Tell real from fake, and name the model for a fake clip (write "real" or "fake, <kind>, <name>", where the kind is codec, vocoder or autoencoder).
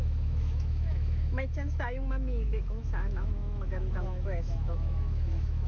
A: fake, autoencoder, DAC-VAE